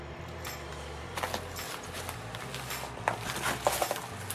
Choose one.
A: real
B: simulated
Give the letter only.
A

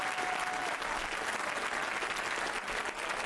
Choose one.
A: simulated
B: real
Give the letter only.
B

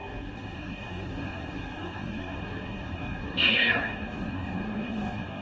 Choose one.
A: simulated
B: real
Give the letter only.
A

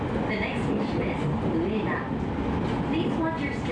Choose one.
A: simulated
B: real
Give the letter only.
B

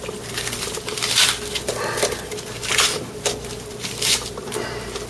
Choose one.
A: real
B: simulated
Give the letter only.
A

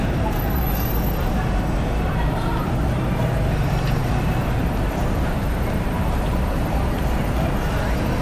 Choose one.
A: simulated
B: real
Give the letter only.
A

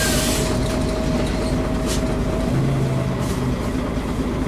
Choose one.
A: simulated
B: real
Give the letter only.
B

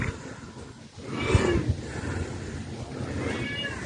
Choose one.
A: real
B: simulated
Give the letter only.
A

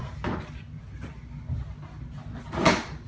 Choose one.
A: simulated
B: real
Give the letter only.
B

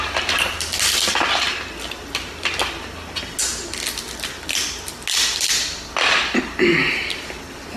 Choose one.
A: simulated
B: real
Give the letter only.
B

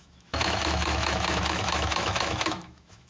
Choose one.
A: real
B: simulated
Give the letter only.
B